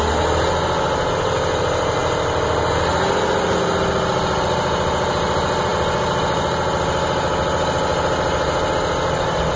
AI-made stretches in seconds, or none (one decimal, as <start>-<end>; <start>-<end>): none